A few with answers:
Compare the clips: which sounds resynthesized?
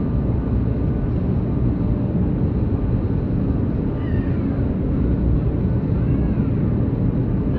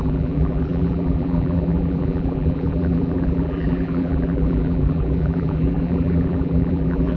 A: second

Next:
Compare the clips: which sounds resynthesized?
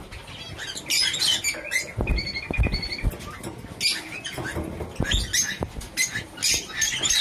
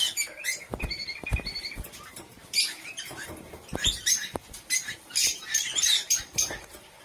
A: second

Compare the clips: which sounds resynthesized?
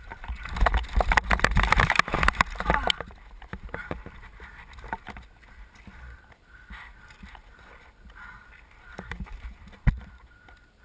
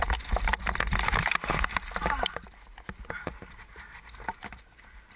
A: first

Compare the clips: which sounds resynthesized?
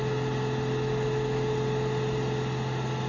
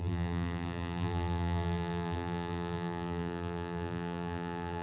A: second